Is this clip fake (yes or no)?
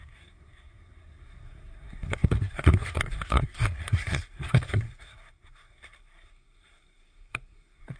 yes